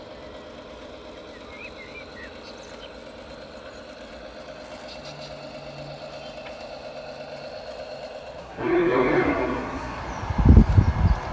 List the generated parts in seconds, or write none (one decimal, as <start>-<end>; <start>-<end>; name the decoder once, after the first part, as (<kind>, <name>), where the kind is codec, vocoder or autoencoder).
8.4-10.0 (codec, SNAC)